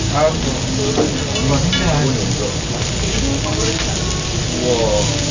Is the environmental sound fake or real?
real